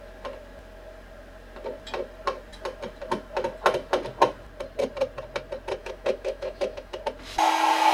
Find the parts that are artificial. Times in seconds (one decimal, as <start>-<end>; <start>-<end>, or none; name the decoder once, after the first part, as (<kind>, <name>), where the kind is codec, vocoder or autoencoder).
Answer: 5.8-7.0 (autoencoder, DAC-VAE)

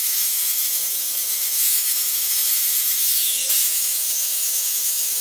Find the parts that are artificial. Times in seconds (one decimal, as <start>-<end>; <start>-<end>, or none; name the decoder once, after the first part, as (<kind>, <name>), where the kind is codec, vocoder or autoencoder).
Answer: 0.0-5.2 (autoencoder, DAC-VAE)

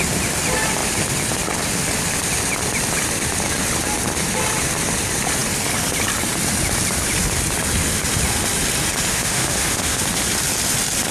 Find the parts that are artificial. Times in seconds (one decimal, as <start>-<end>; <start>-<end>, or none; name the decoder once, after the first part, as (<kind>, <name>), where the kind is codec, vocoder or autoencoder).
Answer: 9.1-10.0 (autoencoder, DAC-VAE)

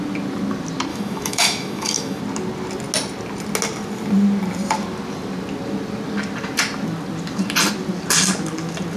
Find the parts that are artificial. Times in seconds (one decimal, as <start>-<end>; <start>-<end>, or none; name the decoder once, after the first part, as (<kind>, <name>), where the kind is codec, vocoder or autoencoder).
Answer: 0.9-2.2 (autoencoder, DAC-VAE)

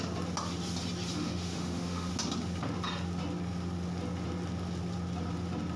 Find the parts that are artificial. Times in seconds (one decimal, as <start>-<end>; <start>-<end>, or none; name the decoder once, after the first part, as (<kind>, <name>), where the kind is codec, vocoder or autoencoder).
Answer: 1.2-2.1 (autoencoder, DAC-VAE)